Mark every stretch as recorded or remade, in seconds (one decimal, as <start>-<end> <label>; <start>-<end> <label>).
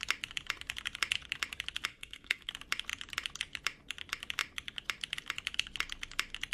0.0-1.9 recorded; 1.9-2.5 remade; 2.5-6.5 recorded